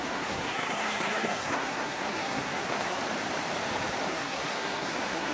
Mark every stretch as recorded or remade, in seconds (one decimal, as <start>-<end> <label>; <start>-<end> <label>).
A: 0.0-3.0 remade; 3.0-4.1 recorded; 4.1-5.3 remade